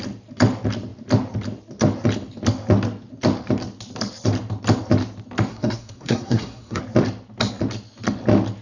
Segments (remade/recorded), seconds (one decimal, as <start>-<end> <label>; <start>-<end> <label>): 0.0-5.5 recorded; 5.5-6.8 remade; 6.8-8.6 recorded